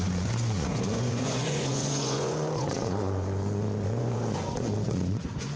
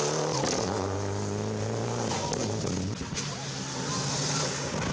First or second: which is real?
second